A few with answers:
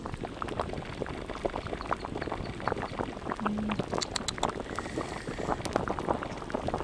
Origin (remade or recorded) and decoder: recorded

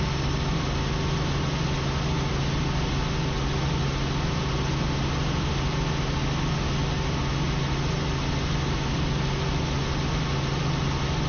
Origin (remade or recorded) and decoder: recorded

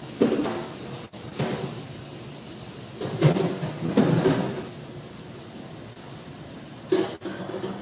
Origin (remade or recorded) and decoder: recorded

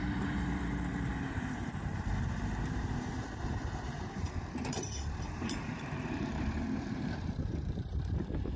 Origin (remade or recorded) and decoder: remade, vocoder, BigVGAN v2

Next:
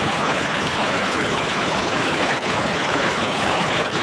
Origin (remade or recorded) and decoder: remade, codec, HILCodec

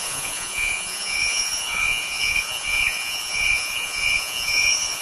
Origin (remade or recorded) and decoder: remade, vocoder, Vocos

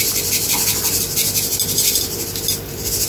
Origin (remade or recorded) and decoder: recorded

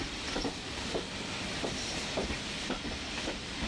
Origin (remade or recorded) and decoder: remade, vocoder, BigVGAN v2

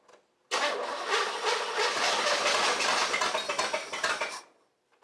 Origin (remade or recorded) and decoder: recorded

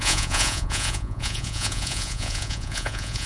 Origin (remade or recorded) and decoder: remade, vocoder, Vocos